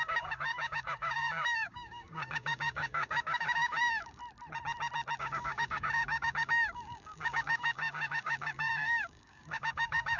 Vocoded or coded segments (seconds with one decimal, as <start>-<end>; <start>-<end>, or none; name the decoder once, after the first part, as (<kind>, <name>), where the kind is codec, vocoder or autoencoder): 0.0-4.2 (codec, DAC); 5.2-10.2